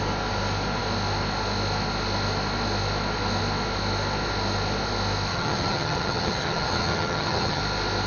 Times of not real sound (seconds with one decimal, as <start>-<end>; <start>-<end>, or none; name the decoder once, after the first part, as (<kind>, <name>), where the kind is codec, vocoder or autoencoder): 5.3-7.6 (vocoder, HiFi-GAN)